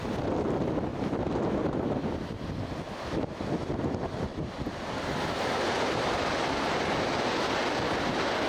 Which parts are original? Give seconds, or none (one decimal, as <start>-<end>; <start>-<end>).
0.0-8.5